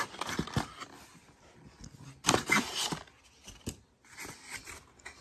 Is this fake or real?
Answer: real